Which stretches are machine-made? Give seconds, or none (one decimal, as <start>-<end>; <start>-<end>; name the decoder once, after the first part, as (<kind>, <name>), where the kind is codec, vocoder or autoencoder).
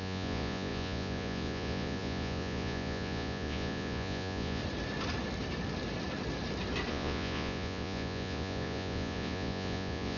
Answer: 0.0-4.6 (vocoder, Vocos); 6.9-10.2